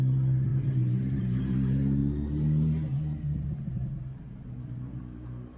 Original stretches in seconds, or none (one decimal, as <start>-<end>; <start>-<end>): 0.0-0.5; 1.4-5.6